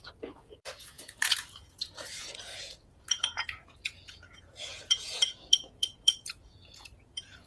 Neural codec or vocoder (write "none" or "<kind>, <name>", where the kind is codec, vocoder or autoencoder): vocoder, Vocos